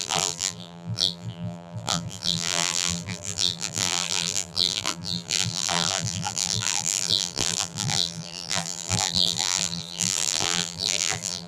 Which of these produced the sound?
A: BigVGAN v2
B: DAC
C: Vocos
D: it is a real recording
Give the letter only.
A